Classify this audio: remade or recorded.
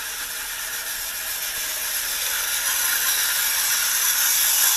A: recorded